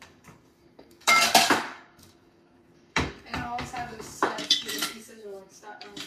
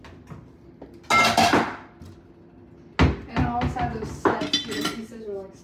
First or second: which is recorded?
second